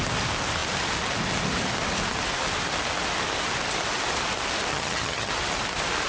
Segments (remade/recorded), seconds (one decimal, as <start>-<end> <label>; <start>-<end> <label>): 0.0-4.7 recorded; 4.7-5.3 remade; 5.3-6.1 recorded